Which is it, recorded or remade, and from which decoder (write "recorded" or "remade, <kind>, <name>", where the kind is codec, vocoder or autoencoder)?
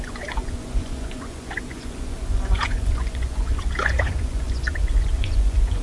remade, vocoder, Vocos